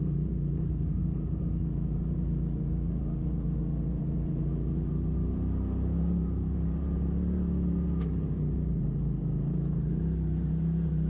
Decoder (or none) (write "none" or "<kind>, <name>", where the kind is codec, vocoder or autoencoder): vocoder, BigVGAN v2